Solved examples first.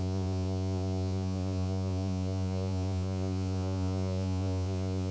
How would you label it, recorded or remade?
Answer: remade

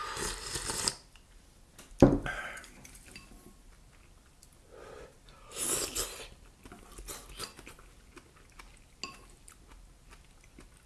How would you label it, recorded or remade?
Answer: recorded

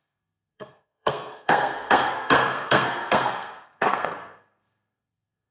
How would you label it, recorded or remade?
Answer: remade